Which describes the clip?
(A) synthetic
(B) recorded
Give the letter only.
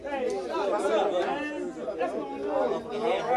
B